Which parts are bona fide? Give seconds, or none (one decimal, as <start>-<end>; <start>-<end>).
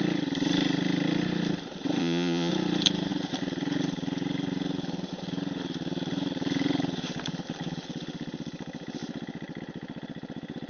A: 0.0-2.0; 2.5-10.7